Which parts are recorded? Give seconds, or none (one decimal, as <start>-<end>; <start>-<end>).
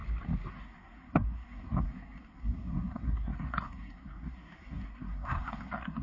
0.0-0.5